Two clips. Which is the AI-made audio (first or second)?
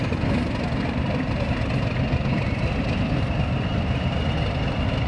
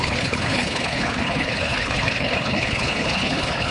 second